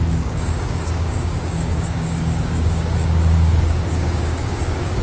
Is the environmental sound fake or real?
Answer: fake